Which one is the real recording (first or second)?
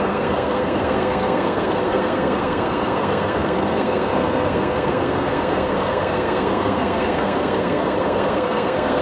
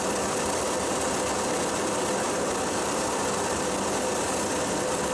second